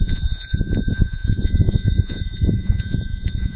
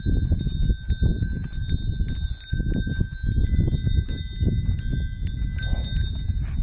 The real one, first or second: second